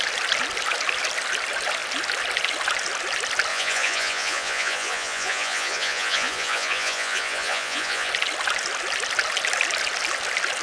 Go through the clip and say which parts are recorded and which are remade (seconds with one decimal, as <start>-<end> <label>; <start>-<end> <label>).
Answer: 0.0-3.5 recorded; 3.5-8.1 remade; 8.1-10.6 recorded